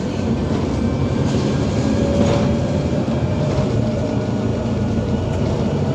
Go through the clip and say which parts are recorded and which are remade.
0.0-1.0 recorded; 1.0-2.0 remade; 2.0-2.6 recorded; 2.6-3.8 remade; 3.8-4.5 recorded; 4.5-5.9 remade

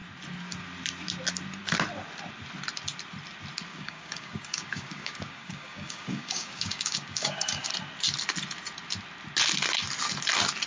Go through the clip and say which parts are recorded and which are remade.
0.0-3.7 recorded; 3.7-7.7 remade; 7.7-10.7 recorded

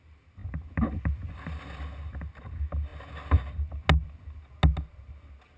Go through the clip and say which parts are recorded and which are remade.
0.0-5.6 recorded